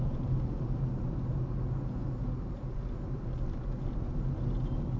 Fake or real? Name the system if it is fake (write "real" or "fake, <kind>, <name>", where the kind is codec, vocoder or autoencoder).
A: real